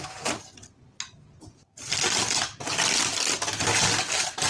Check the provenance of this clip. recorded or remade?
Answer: recorded